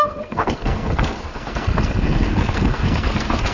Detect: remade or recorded remade